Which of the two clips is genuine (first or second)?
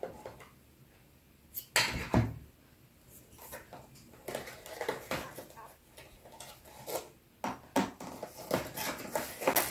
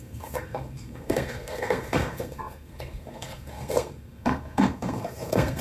first